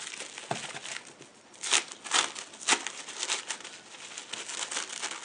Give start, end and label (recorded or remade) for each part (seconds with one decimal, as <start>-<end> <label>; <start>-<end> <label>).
0.0-5.2 recorded